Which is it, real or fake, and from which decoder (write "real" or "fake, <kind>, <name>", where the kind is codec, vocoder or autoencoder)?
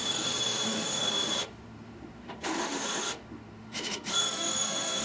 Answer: fake, autoencoder, DAC-VAE